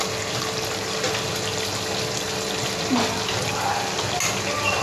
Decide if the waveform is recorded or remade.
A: recorded